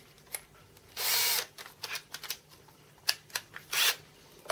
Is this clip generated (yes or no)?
no